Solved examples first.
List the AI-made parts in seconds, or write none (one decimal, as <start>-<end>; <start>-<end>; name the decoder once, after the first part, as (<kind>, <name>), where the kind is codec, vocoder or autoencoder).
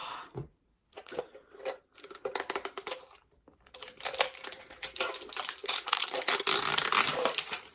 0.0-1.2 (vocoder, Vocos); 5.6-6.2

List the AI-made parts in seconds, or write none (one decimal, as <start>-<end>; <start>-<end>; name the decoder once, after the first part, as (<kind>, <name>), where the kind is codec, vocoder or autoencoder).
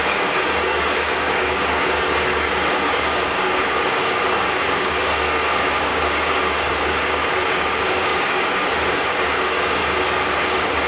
0.0-9.8 (codec, DAC); 10.4-10.9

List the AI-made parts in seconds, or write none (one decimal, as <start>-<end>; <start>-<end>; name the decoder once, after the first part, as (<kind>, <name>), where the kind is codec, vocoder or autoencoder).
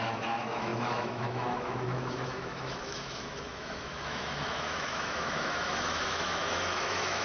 0.0-7.2 (autoencoder, DAC-VAE)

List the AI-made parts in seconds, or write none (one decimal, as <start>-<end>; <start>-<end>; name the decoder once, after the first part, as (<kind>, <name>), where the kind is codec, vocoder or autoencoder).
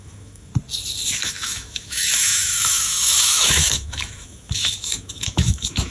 0.0-0.5 (autoencoder, DAC-VAE); 1.1-5.9